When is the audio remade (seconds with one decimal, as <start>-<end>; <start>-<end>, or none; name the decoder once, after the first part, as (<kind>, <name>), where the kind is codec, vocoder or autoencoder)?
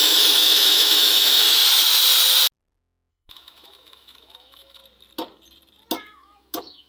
0.0-1.6 (autoencoder, DAC-VAE); 3.1-4.8; 6.0-6.9